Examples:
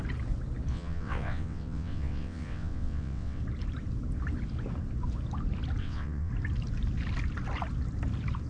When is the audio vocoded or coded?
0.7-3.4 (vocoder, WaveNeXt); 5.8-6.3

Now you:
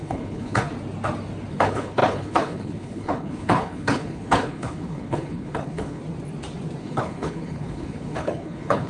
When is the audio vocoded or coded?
0.0-0.7 (codec, HILCodec); 1.5-6.0; 6.8-8.9

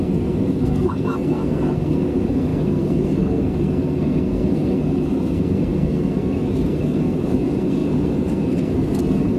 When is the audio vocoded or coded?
0.0-9.4 (codec, SNAC)

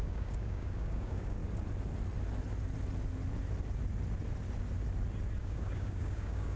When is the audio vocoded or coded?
0.0-1.4 (codec, DAC); 5.4-6.6

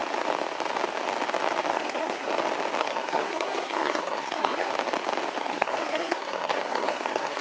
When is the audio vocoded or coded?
1.7-2.3 (codec, SNAC); 2.8-4.7; 5.4-7.4